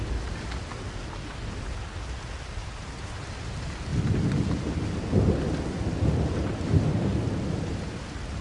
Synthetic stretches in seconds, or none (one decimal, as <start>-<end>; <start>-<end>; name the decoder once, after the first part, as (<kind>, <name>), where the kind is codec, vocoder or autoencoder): none